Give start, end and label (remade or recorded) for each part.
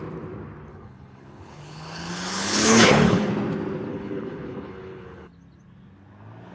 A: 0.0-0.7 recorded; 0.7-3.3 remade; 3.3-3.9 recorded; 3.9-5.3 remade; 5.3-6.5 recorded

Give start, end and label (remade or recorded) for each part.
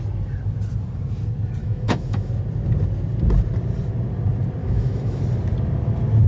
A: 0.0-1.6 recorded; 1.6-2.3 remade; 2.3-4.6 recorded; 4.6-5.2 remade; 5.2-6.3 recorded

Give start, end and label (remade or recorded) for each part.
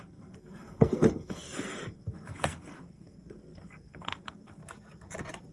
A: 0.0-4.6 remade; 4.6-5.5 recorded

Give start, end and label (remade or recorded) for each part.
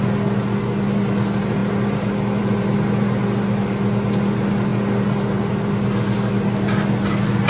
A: 0.0-7.5 recorded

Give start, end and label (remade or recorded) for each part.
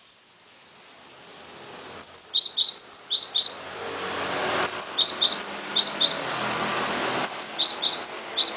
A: 0.0-1.3 recorded; 1.3-4.8 remade; 4.8-8.6 recorded